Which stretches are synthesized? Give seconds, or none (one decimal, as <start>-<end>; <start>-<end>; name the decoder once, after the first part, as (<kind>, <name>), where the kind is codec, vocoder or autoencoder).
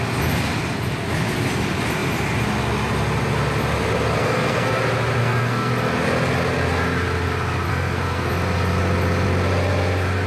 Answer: 4.2-4.8 (codec, SNAC); 5.2-5.7; 7.7-8.3